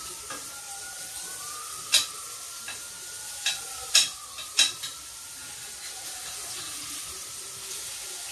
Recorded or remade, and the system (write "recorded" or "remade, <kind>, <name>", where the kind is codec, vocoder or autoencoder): recorded